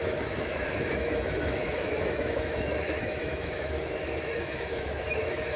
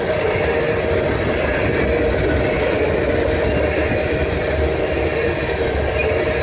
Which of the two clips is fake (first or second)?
first